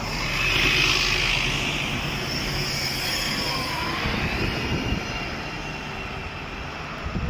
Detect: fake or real real